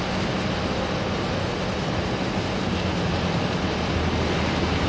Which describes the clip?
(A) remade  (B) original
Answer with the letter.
B